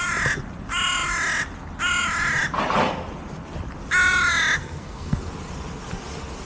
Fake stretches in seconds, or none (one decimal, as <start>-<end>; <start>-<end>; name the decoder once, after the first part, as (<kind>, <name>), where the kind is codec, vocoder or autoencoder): 4.6-5.2 (codec, SNAC)